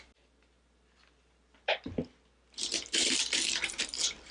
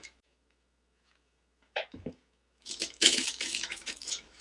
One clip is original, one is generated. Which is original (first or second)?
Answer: first